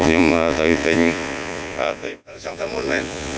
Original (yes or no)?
no